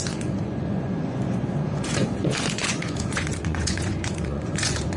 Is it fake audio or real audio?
fake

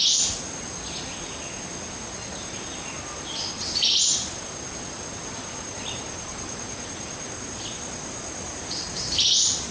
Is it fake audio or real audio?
real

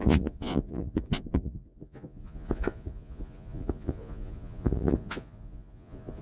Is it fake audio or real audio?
fake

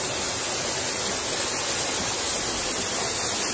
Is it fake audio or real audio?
real